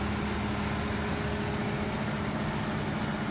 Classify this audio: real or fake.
real